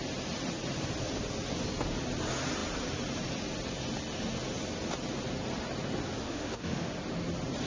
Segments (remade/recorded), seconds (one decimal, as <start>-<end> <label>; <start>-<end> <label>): 0.0-6.2 recorded; 6.2-6.9 remade; 6.9-7.7 recorded